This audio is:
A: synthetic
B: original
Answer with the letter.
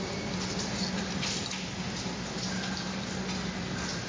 B